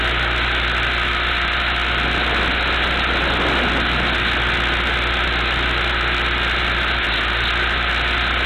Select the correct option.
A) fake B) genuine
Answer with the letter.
B